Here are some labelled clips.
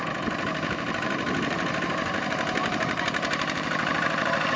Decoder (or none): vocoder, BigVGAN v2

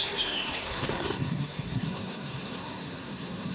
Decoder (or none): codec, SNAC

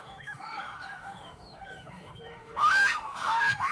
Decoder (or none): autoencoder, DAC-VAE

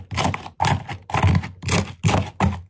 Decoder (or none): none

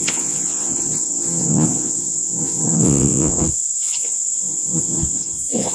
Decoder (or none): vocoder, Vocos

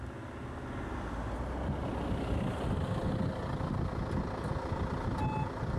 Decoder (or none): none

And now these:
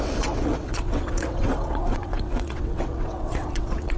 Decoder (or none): vocoder, WaveNeXt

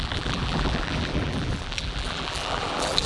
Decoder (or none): vocoder, BigVGAN v2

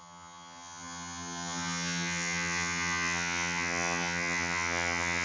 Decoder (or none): vocoder, HiFi-GAN